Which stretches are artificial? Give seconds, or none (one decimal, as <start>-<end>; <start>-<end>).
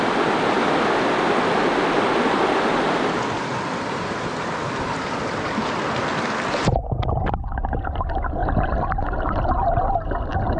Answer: none